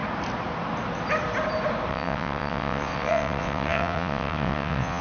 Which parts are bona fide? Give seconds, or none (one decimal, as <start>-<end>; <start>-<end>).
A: 0.0-1.9